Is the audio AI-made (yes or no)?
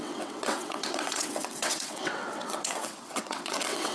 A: yes